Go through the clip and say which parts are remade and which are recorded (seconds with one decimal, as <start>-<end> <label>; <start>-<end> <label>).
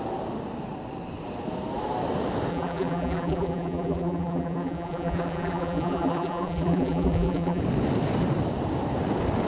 0.0-2.5 recorded; 2.5-7.6 remade; 7.6-9.5 recorded